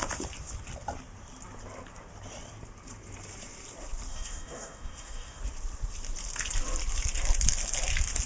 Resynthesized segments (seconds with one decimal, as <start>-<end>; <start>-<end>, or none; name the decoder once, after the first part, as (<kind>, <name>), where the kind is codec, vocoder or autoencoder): 4.1-5.4 (codec, DAC)